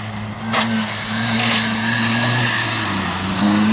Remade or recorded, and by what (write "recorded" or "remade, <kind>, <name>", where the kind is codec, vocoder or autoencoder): recorded